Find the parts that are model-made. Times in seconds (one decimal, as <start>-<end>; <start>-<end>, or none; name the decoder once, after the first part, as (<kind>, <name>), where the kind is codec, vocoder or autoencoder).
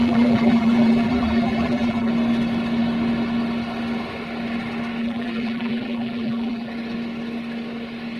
0.0-2.1 (vocoder, BigVGAN v2); 5.0-6.7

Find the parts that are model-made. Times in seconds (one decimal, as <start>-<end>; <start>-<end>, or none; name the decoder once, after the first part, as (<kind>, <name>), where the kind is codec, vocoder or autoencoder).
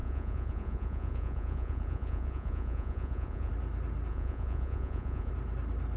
0.0-3.5 (vocoder, Vocos); 4.1-5.3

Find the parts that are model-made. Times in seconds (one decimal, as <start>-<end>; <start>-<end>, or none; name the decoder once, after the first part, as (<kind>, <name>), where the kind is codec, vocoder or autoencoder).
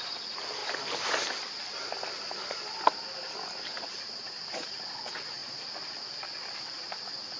none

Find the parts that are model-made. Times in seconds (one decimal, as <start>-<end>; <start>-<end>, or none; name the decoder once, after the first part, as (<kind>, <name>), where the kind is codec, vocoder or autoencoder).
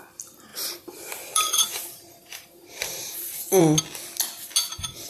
0.5-3.6 (vocoder, BigVGAN v2)